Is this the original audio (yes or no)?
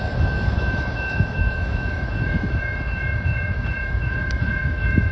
no